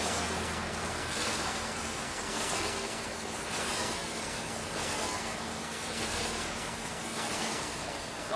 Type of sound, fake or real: fake